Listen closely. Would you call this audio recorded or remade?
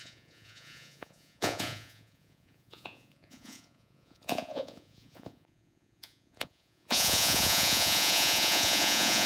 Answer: remade